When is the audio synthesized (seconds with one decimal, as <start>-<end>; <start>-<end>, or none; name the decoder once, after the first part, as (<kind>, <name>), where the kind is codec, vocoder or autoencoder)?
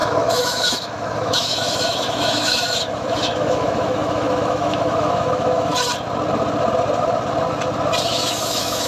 0.0-5.7 (autoencoder, DAC-VAE); 8.1-8.9